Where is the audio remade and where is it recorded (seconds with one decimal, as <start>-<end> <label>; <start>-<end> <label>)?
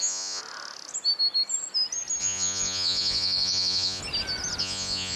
0.0-0.4 remade; 0.4-2.2 recorded; 2.2-4.0 remade; 4.0-4.6 recorded; 4.6-5.2 remade